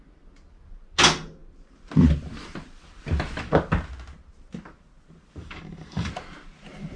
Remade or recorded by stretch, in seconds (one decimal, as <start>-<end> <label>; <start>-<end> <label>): 0.0-5.4 recorded; 5.4-6.1 remade; 6.1-7.0 recorded